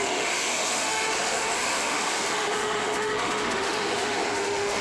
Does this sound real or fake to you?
fake